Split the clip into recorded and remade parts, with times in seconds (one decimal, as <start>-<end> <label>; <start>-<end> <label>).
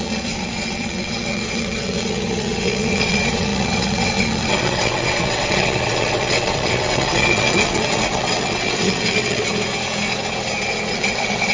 0.0-9.5 remade; 9.5-10.9 recorded; 10.9-11.5 remade